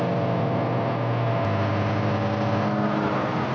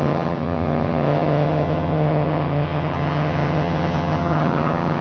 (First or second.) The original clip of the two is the first